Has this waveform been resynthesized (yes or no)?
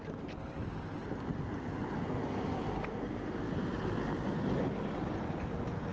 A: no